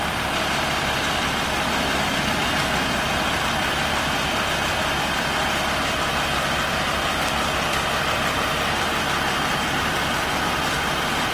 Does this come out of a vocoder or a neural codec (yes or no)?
no